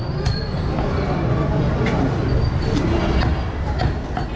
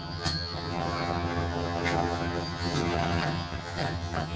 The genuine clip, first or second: first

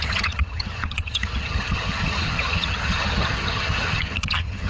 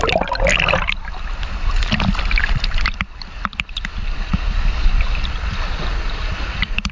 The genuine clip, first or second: second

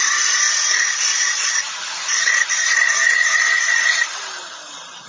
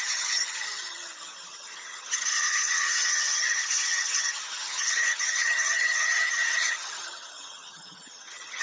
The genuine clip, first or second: first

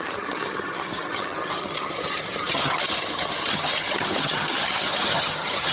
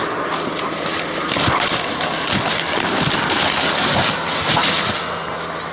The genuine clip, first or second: second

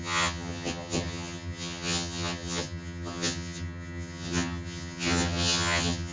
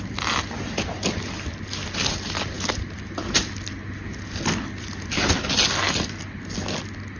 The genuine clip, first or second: second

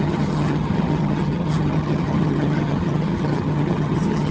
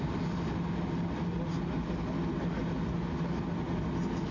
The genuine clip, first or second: second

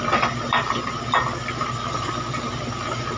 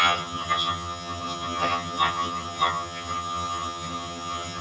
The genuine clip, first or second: first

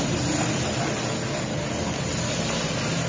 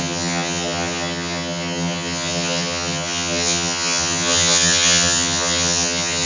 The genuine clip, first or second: first